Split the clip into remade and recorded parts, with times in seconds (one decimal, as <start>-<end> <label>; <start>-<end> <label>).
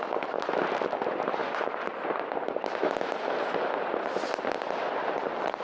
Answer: 0.0-5.6 recorded